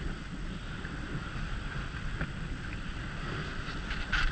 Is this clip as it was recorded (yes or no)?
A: yes